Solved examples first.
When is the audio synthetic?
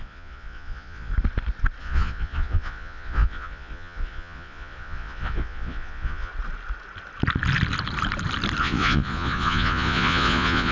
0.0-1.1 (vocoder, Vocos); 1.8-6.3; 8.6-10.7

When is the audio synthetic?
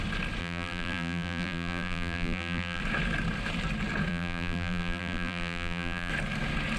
0.4-2.8 (vocoder, BigVGAN v2); 4.1-6.1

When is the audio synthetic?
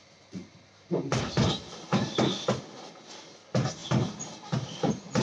none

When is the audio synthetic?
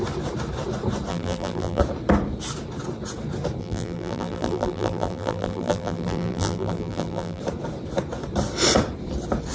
1.1-1.8 (vocoder, BigVGAN v2); 3.6-7.4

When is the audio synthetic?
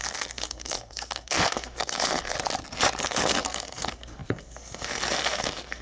0.0-2.3 (codec, SNAC); 3.0-5.8